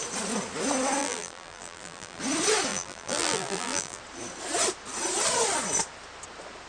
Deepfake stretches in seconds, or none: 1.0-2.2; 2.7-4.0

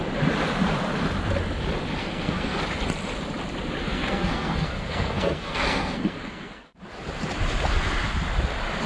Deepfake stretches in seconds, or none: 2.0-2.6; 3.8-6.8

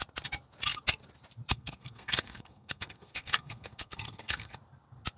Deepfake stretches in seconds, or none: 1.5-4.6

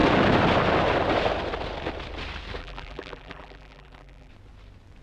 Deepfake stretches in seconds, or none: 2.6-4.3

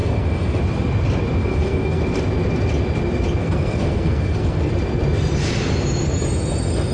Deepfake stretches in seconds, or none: 0.0-0.6; 1.4-2.0; 3.4-4.7

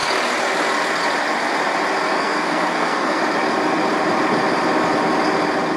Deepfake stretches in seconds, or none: 2.1-3.2

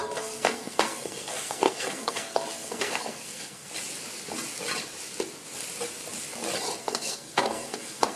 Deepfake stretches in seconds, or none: 0.0-3.7; 6.8-8.2